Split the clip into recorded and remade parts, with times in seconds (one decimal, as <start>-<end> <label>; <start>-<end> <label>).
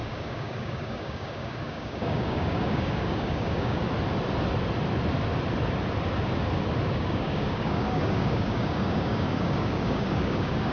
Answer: 0.0-3.8 remade; 3.8-6.9 recorded; 6.9-10.7 remade